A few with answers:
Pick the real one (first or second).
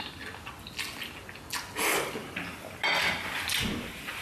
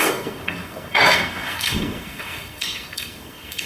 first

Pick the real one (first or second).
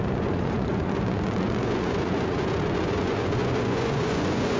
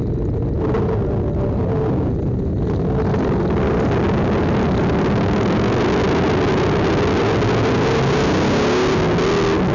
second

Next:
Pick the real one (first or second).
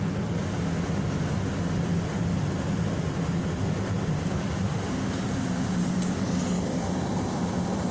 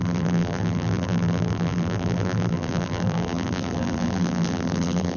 first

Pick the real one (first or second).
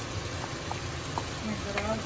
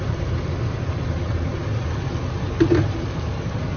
first